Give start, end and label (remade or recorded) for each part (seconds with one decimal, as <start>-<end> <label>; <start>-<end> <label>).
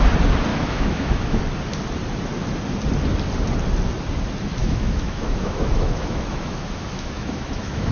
0.0-0.5 recorded; 0.5-1.4 remade; 1.4-4.6 recorded; 4.6-7.9 remade